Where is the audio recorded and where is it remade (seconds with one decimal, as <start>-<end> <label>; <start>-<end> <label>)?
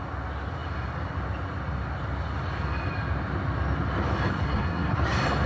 0.0-4.3 recorded; 4.3-5.0 remade; 5.0-5.5 recorded